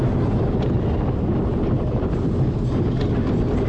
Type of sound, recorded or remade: recorded